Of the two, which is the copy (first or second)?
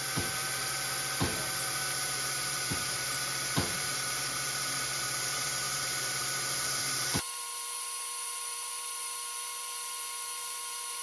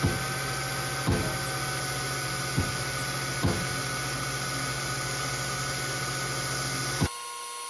first